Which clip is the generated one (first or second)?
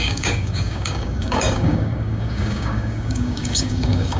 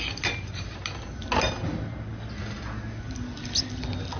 first